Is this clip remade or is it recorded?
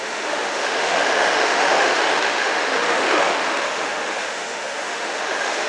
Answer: remade